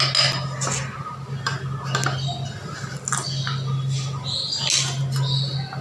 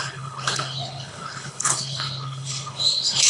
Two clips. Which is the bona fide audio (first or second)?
first